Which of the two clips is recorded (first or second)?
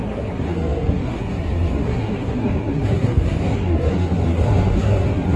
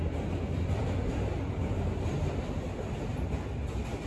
second